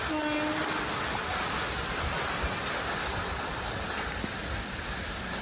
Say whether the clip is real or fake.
real